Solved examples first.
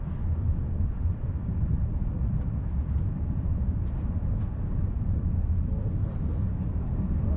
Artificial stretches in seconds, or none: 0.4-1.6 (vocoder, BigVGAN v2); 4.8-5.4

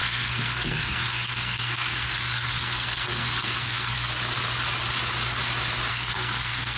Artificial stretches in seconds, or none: 0.0-4.1 (codec, SNAC); 5.9-6.8

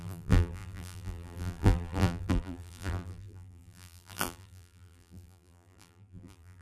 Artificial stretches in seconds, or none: 0.0-6.6 (vocoder, BigVGAN v2)

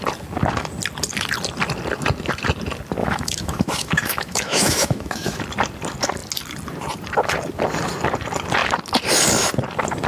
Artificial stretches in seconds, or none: 3.0-5.4 (autoencoder, DAC-VAE)

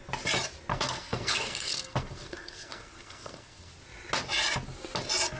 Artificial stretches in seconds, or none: 0.7-3.7 (codec, SNAC)

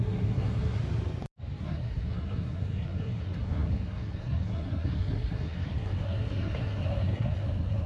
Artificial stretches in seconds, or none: 0.0-0.8 (codec, SNAC); 1.6-7.9

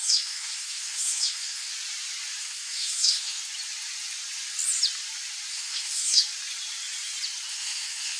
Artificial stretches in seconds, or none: 0.0-1.7 (codec, SNAC); 2.4-3.4; 5.5-6.2; 7.5-8.2

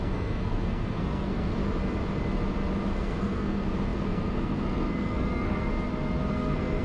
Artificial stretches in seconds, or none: 0.0-1.6 (codec, SNAC); 2.9-5.7; 6.3-6.8